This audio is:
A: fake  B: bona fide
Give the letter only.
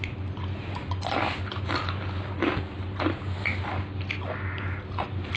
B